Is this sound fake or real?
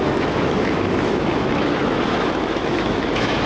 fake